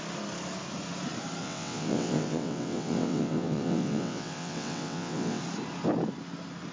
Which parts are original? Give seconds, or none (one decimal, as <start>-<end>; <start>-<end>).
0.0-1.4; 5.4-6.7